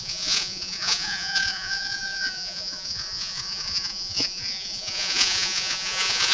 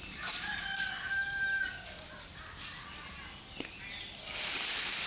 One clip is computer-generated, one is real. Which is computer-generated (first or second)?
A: first